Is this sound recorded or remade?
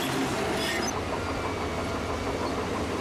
recorded